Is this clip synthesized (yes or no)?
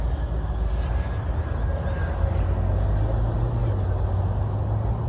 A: no